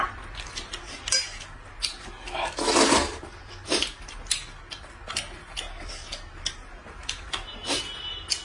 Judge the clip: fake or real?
real